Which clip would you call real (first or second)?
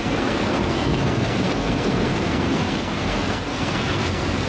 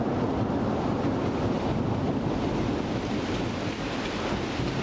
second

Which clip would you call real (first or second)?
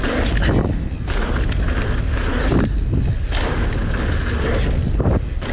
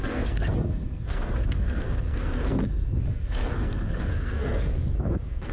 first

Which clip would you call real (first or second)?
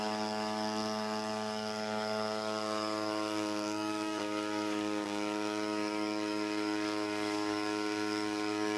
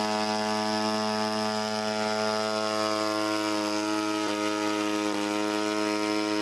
second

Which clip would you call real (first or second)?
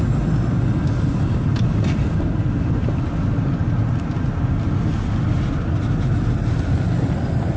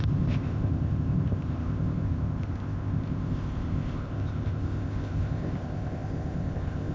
first